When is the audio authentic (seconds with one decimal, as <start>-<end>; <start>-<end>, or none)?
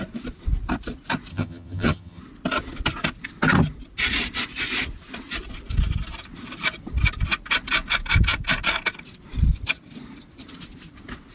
0.0-1.3; 2.2-11.3